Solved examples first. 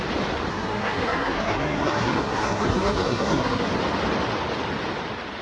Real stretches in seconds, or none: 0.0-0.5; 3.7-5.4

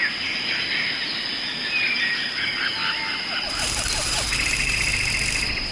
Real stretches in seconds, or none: 0.0-1.5; 4.9-5.7

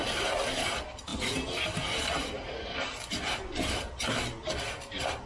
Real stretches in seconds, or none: 0.0-5.3

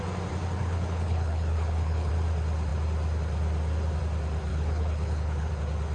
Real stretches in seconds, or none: 0.0-0.6; 2.1-4.5; 5.5-5.9

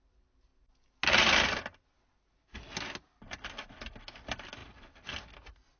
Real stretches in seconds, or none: 0.0-4.6; 5.3-5.8

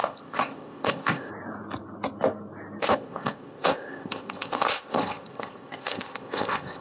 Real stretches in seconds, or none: 1.3-2.8

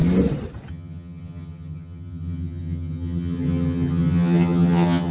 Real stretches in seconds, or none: 0.0-0.7